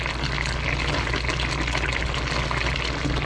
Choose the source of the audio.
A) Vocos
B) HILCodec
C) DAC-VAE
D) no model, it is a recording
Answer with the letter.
D